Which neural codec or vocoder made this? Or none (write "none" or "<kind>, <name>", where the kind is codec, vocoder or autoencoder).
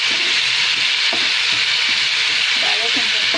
none